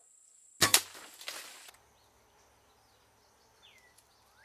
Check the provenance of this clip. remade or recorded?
recorded